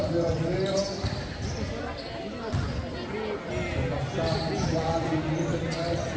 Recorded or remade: recorded